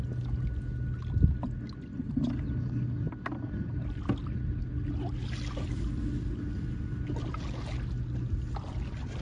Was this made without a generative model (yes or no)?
yes